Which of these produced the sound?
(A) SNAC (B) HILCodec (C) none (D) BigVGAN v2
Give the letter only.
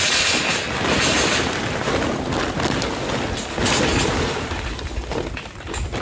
C